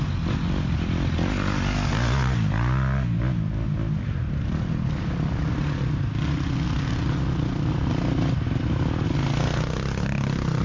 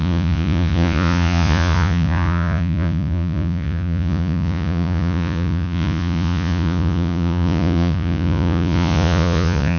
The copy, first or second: second